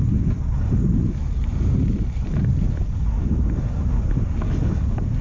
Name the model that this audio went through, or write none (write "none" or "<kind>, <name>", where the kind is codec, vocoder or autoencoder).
none